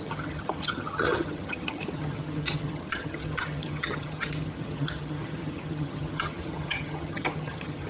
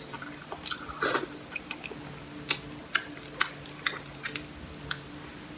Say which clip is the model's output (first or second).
first